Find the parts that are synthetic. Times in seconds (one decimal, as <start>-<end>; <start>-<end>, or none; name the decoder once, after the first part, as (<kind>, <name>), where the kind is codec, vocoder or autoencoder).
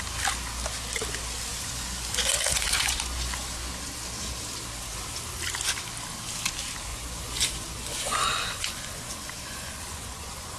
1.5-3.7 (vocoder, Vocos); 6.9-10.6